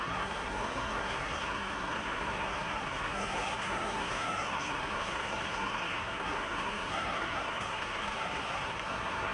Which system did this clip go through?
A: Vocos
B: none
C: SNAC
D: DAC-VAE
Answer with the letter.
C